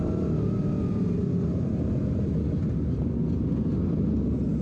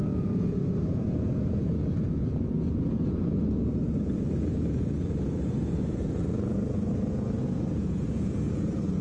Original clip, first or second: first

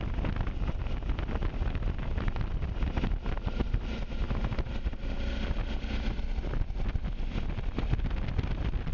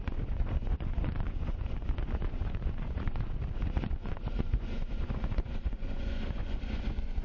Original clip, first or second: first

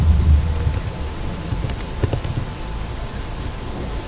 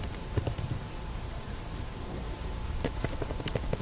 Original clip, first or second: first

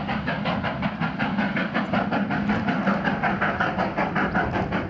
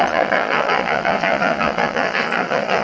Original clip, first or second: first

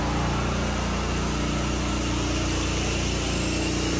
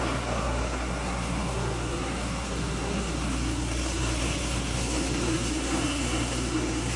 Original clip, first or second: first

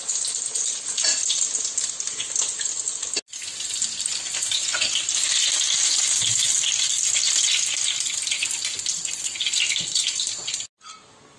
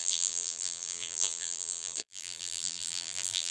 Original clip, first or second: first